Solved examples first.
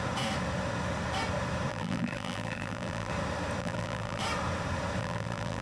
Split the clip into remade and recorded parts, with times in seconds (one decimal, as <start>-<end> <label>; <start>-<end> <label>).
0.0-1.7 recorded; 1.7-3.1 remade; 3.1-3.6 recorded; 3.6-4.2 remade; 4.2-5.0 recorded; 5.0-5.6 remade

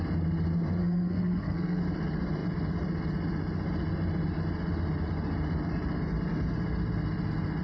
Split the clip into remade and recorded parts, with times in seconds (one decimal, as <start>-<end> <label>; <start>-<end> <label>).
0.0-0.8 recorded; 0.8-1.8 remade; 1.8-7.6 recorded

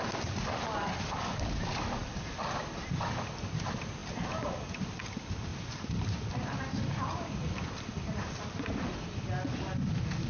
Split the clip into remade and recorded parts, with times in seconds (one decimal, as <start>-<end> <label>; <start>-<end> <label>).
0.0-2.0 recorded; 2.0-2.6 remade; 2.6-5.5 recorded; 5.5-8.2 remade; 8.2-10.3 recorded